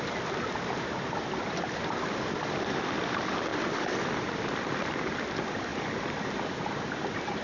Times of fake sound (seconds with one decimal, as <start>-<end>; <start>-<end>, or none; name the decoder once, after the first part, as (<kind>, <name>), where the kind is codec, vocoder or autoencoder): 3.5-4.6 (vocoder, BigVGAN v2)